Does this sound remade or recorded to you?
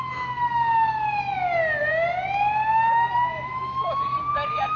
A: recorded